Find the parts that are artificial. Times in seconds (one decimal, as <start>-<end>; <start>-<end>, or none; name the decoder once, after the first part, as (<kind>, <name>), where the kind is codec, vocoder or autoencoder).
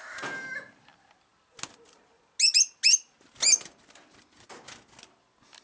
none